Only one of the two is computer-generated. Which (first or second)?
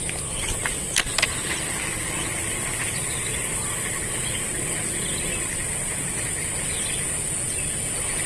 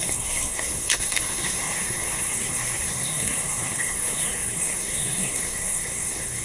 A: second